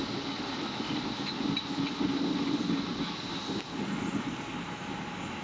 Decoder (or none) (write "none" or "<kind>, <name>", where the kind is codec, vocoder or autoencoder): none